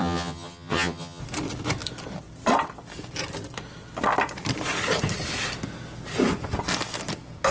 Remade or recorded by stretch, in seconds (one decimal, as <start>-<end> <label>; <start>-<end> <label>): 0.0-1.2 remade; 1.2-7.5 recorded